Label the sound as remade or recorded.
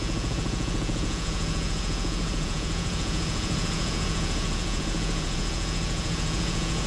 remade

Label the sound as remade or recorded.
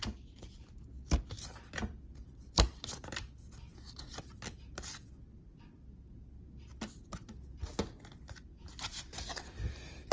recorded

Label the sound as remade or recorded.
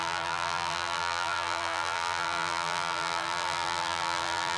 remade